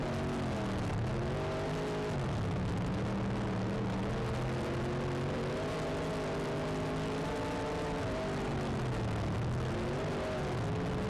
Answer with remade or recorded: recorded